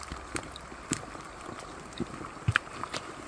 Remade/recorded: recorded